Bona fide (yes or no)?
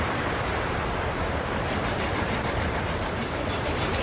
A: no